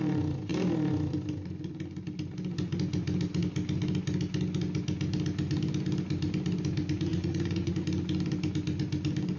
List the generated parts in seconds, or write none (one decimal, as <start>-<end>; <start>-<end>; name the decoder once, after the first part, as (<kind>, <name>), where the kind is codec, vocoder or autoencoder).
7.1-7.7 (vocoder, Vocos)